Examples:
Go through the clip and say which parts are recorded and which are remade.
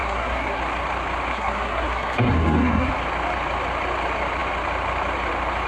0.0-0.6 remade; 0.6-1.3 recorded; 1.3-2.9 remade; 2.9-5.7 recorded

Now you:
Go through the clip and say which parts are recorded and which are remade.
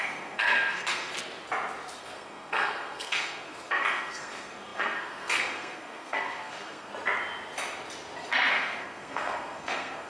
0.0-1.1 remade; 1.1-2.0 recorded; 2.0-6.9 remade; 6.9-8.5 recorded; 8.5-10.1 remade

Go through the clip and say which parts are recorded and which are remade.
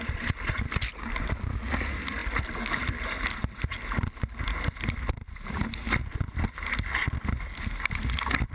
0.0-8.5 recorded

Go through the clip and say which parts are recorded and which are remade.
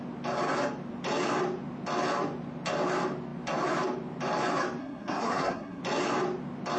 0.0-4.8 recorded; 4.8-5.8 remade; 5.8-6.8 recorded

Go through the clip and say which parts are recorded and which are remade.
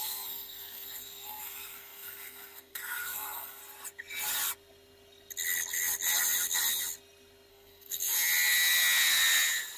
0.0-3.6 remade; 3.6-7.5 recorded; 7.5-8.1 remade; 8.1-9.8 recorded